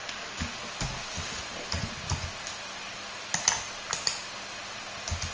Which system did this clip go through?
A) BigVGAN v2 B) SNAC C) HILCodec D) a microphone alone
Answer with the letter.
D